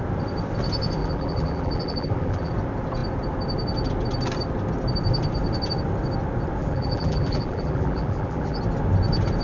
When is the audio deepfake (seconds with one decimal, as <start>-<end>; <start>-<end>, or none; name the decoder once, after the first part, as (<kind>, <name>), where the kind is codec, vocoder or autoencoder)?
1.0-2.5 (vocoder, BigVGAN v2); 6.6-8.6